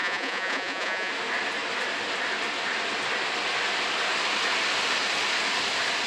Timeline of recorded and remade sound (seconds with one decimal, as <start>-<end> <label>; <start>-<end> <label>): 0.0-1.1 remade; 1.1-6.1 recorded